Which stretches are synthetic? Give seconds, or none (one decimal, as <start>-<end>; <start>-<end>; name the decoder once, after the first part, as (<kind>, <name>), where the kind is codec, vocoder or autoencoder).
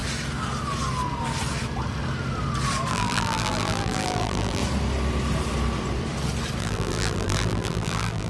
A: 2.9-4.6 (vocoder, BigVGAN v2); 6.6-8.3